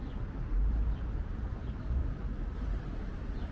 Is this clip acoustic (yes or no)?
yes